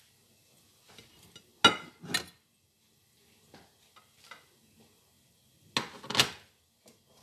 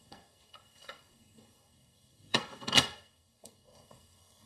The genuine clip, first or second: first